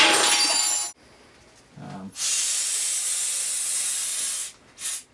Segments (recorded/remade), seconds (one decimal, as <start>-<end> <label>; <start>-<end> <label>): 0.0-5.1 recorded